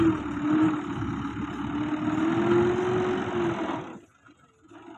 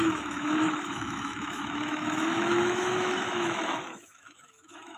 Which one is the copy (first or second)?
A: second